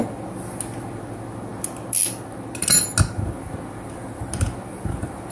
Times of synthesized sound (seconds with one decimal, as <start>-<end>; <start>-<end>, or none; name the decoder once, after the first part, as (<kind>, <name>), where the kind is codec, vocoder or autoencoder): none